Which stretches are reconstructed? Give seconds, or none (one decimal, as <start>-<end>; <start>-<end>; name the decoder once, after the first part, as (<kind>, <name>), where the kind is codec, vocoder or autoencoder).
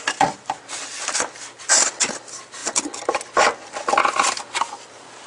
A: none